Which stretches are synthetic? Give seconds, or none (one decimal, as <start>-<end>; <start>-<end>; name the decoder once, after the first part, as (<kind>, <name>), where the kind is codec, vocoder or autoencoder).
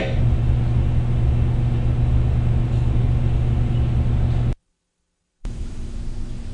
4.6-6.0 (vocoder, BigVGAN v2)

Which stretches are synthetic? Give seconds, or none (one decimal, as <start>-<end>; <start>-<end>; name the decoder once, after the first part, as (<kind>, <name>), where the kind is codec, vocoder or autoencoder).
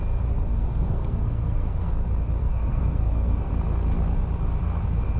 0.5-1.9 (codec, SNAC); 2.4-3.5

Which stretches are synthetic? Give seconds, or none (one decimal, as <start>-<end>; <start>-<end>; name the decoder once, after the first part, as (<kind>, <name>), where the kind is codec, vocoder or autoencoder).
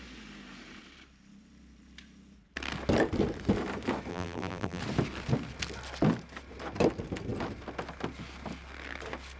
4.1-4.8 (vocoder, BigVGAN v2)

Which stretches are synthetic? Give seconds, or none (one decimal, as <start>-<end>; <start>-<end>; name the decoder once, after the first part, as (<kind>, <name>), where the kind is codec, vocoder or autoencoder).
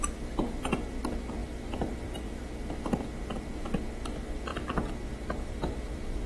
1.4-2.3 (vocoder, BigVGAN v2); 4.5-6.3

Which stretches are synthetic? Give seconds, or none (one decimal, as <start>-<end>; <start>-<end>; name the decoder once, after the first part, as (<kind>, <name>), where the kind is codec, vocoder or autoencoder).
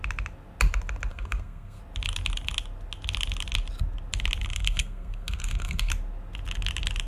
1.1-1.8 (codec, SNAC); 4.5-5.9